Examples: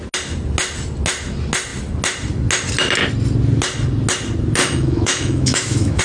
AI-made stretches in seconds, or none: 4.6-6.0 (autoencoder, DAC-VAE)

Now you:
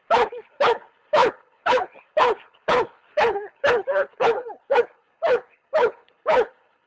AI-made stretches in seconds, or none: 0.0-6.9 (codec, HILCodec)

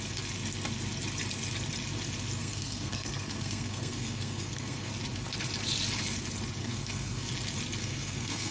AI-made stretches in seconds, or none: 2.4-4.9 (codec, SNAC); 6.6-7.3; 7.8-8.5

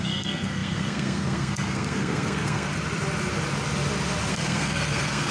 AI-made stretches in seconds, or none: 0.0-2.7 (codec, SNAC); 4.3-5.3

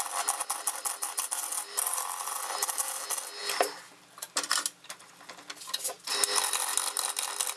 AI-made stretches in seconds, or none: 0.4-2.8 (vocoder, BigVGAN v2)

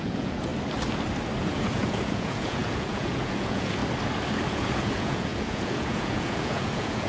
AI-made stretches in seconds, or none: 0.0-0.5 (vocoder, Vocos); 1.4-3.8; 4.5-7.1